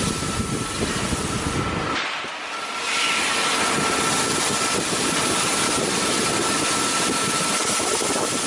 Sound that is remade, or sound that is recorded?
recorded